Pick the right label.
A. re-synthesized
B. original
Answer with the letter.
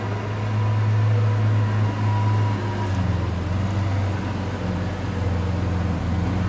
B